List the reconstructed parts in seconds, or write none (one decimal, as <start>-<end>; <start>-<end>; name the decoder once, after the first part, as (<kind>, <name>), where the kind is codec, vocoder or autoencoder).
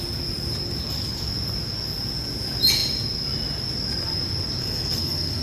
4.6-5.4 (codec, SNAC)